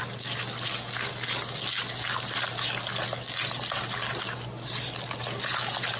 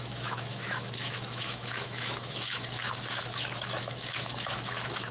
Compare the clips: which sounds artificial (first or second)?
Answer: second